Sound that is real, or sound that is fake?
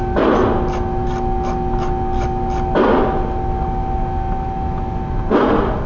real